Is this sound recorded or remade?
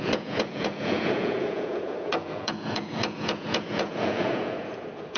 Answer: remade